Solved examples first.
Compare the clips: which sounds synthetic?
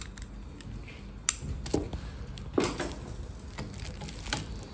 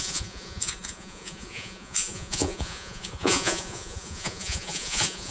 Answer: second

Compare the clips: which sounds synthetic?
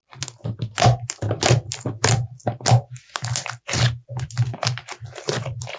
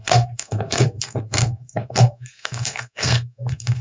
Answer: second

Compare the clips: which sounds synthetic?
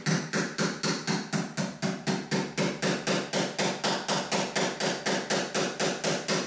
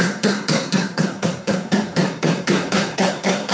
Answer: second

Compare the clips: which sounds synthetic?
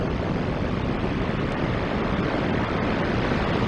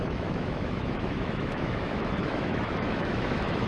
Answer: second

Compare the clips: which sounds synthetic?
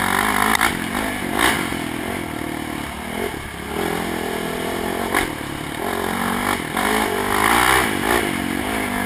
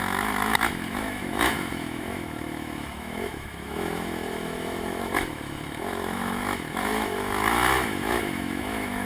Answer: second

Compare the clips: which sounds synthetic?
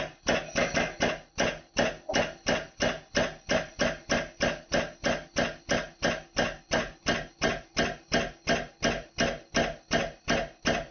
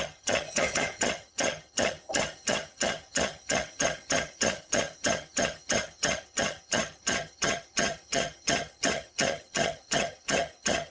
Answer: second